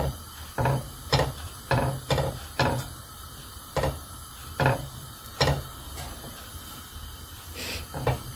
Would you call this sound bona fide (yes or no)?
no